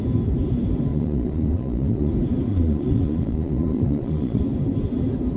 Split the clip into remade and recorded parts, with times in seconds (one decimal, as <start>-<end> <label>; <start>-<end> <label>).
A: 0.0-0.9 recorded; 0.9-2.1 remade; 2.1-2.5 recorded; 2.5-4.4 remade; 4.4-5.4 recorded